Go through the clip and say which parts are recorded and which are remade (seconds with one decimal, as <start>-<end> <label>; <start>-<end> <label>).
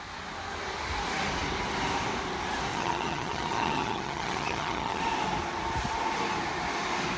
0.0-2.7 recorded; 2.7-5.0 remade; 5.0-7.2 recorded